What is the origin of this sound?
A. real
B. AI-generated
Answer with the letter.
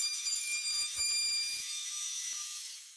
B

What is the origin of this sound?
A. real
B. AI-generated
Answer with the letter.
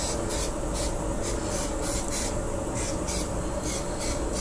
A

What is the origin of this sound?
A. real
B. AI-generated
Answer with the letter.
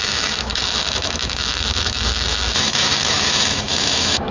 B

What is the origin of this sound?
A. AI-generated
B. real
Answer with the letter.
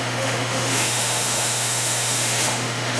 A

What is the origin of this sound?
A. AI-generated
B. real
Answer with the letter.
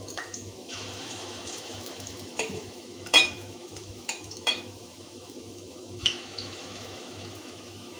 A